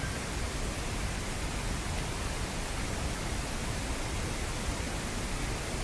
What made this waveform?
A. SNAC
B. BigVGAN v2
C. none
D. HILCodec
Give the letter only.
C